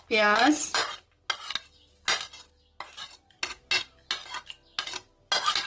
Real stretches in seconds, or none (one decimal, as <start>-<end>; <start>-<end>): 0.0-5.7

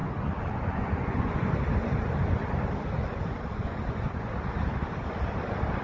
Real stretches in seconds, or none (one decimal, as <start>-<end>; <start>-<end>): 1.5-3.5; 4.3-5.8

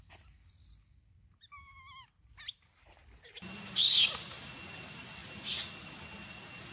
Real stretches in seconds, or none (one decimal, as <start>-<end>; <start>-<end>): 0.0-6.7

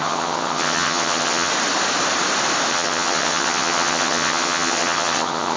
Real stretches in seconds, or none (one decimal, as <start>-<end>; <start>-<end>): 1.5-2.7

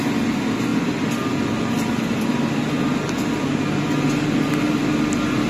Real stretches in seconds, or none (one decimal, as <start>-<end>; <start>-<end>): 0.0-5.5

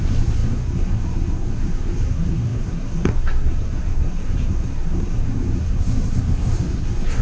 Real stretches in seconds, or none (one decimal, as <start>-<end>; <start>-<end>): none

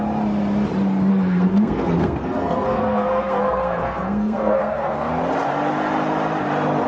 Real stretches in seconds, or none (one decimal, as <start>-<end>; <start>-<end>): 0.0-1.1; 5.1-6.9

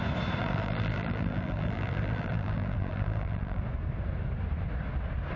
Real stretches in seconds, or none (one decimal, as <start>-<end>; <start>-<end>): 0.0-0.4; 3.6-5.4